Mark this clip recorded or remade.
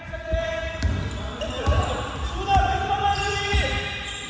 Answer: recorded